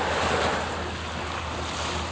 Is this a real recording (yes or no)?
yes